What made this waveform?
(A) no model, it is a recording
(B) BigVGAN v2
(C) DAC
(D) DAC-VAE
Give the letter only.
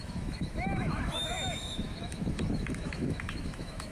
D